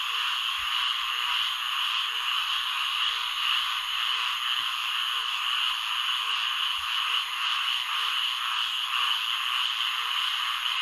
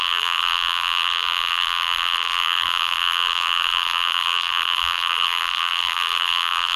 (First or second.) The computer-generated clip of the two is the second